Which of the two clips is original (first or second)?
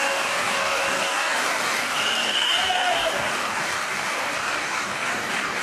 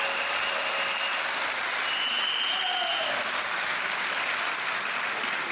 second